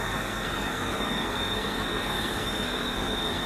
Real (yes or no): no